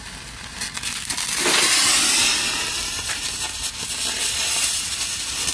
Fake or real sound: real